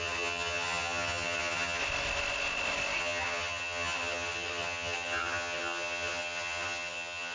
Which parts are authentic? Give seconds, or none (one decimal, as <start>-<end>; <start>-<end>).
1.8-3.0

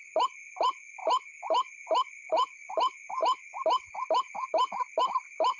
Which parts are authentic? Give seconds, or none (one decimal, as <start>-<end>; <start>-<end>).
0.0-1.0; 1.9-5.6

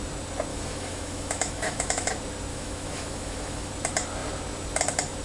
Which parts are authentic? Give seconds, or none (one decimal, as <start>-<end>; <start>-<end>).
0.0-0.5; 2.1-2.5; 3.7-5.2

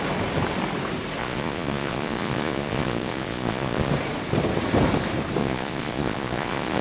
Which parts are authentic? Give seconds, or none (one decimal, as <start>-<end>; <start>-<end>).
0.0-1.2; 3.9-5.4

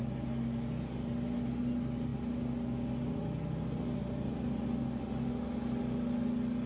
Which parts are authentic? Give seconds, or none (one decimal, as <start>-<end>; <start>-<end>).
0.0-6.7

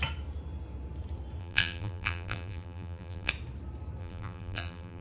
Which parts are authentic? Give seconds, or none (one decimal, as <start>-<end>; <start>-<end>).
0.0-1.4; 3.3-4.0